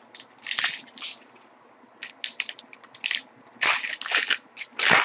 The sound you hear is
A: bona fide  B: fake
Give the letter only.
A